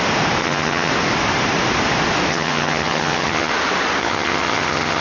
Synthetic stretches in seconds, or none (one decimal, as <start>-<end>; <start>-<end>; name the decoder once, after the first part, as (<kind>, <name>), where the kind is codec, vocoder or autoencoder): 0.4-0.9 (vocoder, HiFi-GAN); 2.3-3.5; 4.0-5.0